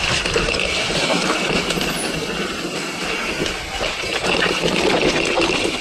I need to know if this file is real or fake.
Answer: real